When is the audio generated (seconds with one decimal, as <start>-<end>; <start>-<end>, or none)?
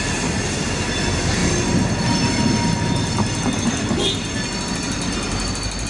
none